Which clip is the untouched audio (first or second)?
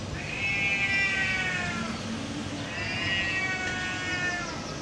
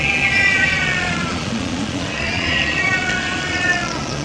first